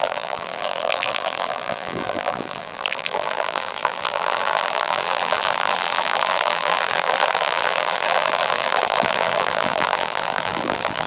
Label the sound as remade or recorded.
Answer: remade